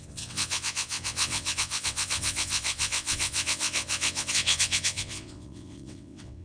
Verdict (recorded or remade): remade